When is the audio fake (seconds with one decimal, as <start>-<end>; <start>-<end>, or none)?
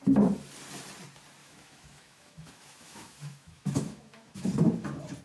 1.4-4.5